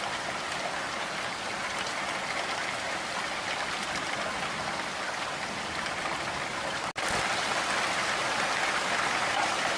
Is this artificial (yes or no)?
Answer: no